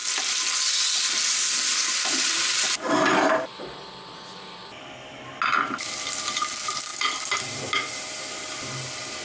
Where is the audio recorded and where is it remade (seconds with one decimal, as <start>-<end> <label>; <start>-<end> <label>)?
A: 0.0-1.7 recorded; 1.7-3.5 remade; 3.5-9.2 recorded